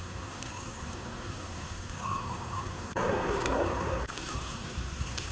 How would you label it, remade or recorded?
remade